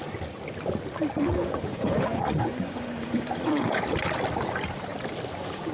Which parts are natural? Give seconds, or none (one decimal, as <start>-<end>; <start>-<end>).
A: 0.0-1.3; 3.7-5.7